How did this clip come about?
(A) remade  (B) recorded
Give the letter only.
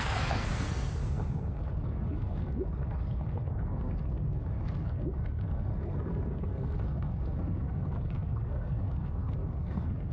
A